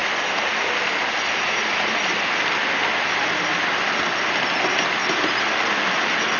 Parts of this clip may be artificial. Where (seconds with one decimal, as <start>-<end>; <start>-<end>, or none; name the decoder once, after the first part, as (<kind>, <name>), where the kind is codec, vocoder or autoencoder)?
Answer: none